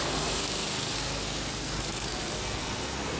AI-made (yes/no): yes